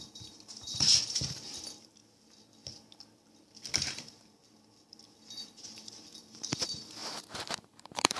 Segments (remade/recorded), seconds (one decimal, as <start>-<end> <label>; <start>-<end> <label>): 0.0-2.0 remade; 2.0-3.7 recorded; 3.7-4.4 remade; 4.4-6.2 recorded; 6.2-8.2 remade